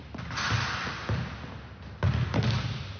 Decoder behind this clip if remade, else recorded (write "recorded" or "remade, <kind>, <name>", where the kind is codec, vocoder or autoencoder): recorded